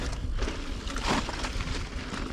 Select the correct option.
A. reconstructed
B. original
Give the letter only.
B